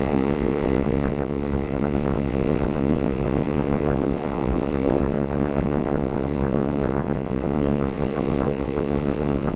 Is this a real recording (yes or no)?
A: no